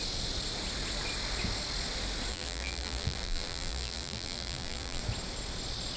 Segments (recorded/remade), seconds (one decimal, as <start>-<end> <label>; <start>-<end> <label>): 0.0-2.3 recorded; 2.3-5.0 remade; 5.0-6.0 recorded